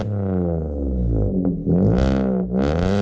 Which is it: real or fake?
real